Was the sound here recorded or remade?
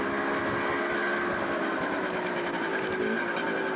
recorded